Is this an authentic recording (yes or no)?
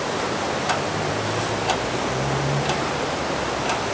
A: yes